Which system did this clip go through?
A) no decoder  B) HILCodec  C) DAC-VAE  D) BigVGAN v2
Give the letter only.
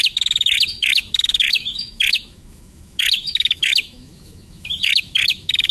C